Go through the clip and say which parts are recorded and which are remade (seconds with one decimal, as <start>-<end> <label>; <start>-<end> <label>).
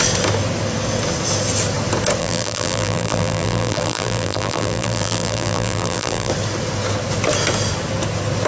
0.0-2.2 recorded; 2.2-6.3 remade; 6.3-8.5 recorded